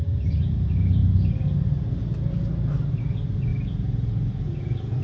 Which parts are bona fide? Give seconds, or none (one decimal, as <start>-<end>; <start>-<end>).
1.0-3.0